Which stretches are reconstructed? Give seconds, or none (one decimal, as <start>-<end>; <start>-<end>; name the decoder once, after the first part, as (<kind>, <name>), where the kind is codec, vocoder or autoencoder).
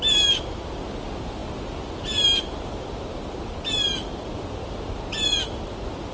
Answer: none